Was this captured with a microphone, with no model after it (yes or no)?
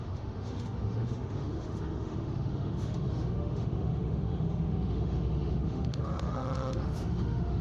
no